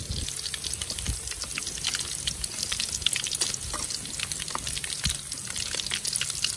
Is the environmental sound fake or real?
real